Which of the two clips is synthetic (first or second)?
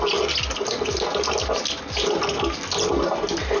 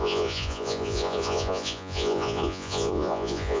second